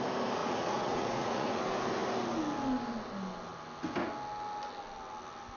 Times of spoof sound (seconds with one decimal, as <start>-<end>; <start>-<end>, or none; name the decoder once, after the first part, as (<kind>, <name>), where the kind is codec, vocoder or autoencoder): 0.4-1.6 (vocoder, Vocos)